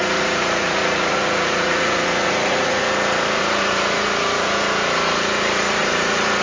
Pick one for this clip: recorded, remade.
remade